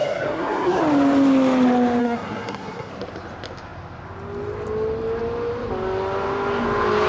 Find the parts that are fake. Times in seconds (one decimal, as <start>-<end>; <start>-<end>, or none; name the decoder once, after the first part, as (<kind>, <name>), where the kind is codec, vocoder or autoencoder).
0.0-0.8 (codec, SNAC); 2.0-2.9